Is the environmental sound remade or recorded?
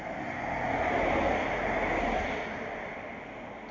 recorded